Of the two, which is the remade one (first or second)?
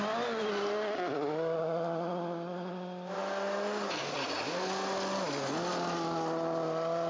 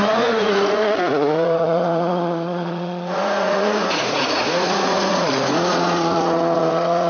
second